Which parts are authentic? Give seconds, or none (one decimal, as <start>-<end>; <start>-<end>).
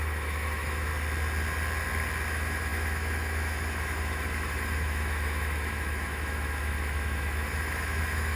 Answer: 0.9-2.3